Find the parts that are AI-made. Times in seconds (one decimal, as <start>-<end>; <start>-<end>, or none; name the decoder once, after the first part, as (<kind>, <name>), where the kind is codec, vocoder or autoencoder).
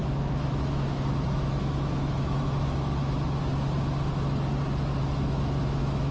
0.0-3.4 (autoencoder, DAC-VAE); 5.0-6.1